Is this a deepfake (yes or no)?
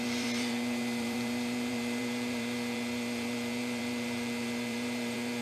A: yes